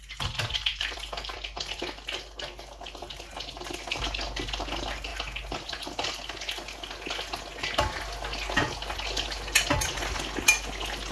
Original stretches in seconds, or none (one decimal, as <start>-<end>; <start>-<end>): 0.0-0.7; 3.0-11.1